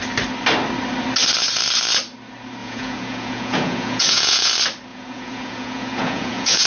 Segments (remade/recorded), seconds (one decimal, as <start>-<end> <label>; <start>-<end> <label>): 0.0-2.6 recorded; 2.6-4.5 remade; 4.5-4.9 recorded; 4.9-6.7 remade